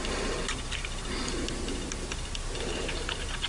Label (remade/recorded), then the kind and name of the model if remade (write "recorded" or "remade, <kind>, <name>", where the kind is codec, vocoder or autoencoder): recorded